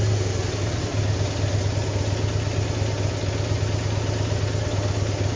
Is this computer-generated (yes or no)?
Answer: no